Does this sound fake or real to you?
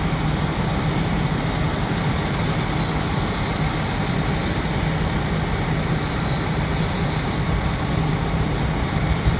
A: real